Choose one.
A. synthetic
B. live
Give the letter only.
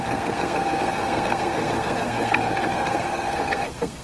A